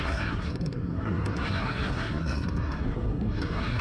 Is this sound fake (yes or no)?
yes